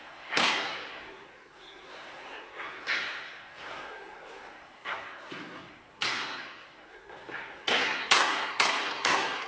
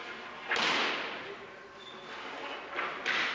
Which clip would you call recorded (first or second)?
second